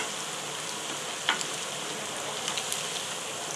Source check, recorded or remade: recorded